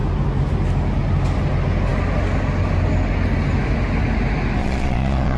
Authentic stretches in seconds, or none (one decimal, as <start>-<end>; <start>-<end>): 0.0-4.6